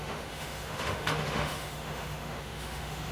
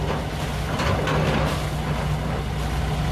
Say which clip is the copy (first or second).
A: first